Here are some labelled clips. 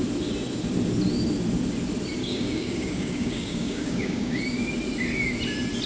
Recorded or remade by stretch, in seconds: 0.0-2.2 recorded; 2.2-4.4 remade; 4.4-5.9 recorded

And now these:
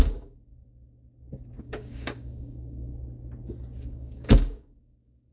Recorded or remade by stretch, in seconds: 0.0-0.5 remade; 0.5-1.6 recorded; 1.6-2.9 remade; 2.9-3.8 recorded; 3.8-5.3 remade

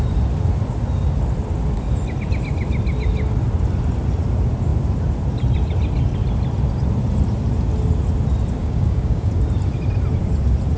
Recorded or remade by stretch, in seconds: 0.0-8.6 recorded; 8.6-9.3 remade; 9.3-10.8 recorded